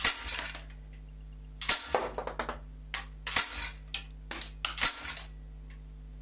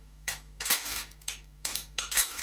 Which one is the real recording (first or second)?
first